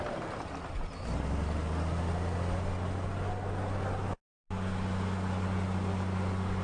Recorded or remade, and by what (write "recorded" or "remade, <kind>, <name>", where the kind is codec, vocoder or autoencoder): recorded